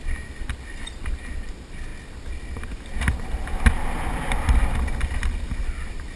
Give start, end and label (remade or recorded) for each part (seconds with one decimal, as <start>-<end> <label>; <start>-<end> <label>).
0.0-6.2 recorded